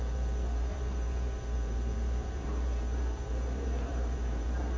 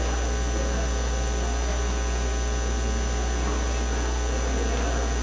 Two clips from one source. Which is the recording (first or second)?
second